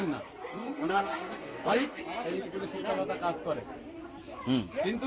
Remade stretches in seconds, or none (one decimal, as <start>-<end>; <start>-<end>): 0.5-2.0